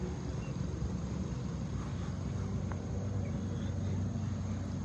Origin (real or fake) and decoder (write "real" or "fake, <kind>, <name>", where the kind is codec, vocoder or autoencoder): real